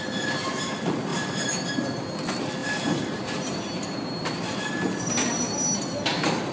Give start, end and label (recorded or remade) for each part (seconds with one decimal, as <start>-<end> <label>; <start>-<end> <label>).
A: 0.0-1.1 recorded; 1.1-1.6 remade; 1.6-2.6 recorded; 2.6-3.6 remade; 3.6-6.5 recorded